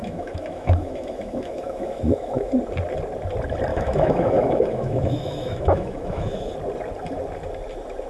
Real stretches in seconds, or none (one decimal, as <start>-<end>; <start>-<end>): 2.5-3.7; 6.5-8.1